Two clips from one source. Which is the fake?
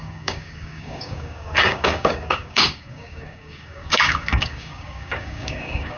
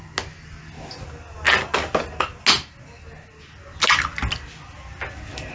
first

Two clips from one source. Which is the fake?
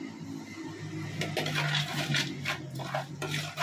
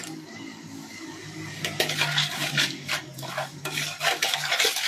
second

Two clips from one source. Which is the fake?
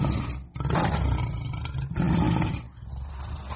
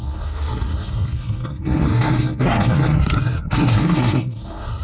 second